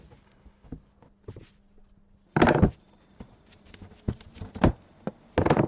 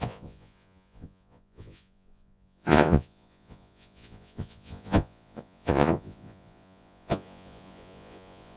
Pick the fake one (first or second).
second